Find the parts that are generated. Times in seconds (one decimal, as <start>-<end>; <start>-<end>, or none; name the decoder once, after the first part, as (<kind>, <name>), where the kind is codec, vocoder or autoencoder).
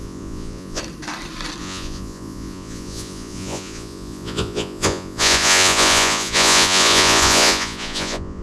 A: 0.0-0.8 (vocoder, Vocos); 1.6-8.4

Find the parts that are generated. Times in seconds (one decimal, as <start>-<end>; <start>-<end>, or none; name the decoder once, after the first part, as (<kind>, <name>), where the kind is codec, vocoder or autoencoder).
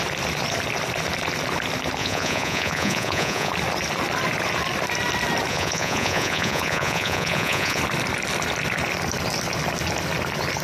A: 2.0-3.5 (vocoder, Vocos); 5.5-7.8